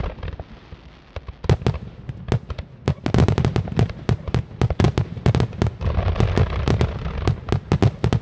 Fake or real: real